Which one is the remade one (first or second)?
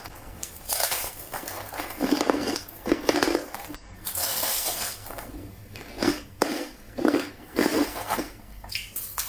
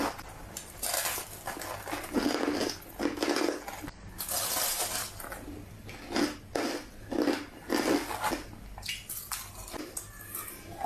first